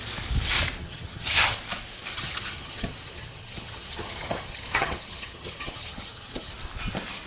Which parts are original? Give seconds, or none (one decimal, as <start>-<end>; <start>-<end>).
0.0-0.8; 1.6-2.1; 6.5-7.3